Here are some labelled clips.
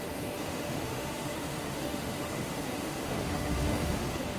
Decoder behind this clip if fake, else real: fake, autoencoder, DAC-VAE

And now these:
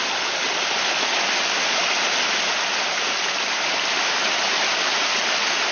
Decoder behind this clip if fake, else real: real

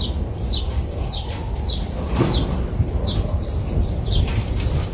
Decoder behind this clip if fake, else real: real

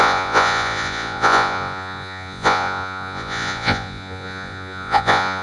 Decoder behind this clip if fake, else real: fake, vocoder, Vocos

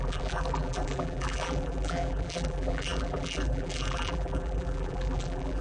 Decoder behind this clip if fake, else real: fake, vocoder, BigVGAN v2